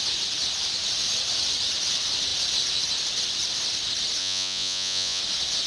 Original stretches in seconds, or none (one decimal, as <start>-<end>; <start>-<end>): 0.0-4.2; 5.2-5.7